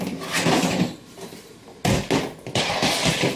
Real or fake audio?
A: real